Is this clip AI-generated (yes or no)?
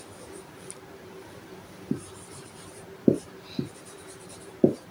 yes